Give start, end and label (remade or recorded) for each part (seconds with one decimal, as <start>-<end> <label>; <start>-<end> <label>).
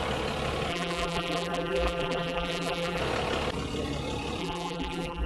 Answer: 0.0-0.7 recorded; 0.7-3.0 remade; 3.0-4.4 recorded; 4.4-5.3 remade